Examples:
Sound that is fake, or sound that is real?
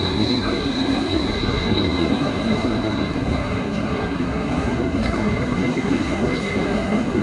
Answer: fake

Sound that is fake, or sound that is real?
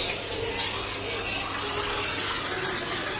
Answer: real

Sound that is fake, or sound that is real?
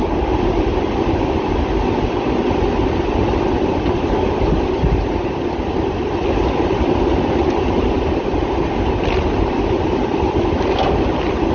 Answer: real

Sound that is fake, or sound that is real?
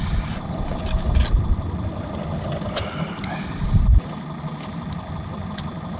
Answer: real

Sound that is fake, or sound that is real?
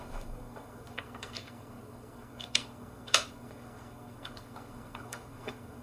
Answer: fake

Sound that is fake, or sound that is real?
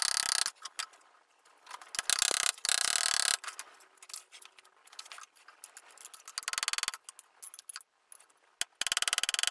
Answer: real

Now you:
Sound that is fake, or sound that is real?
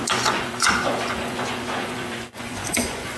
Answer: fake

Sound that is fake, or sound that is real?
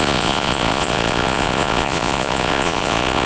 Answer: fake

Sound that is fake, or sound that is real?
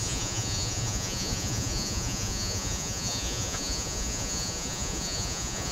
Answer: fake